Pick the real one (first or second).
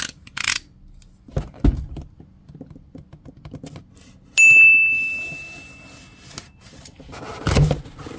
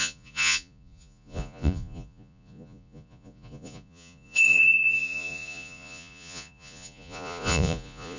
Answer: first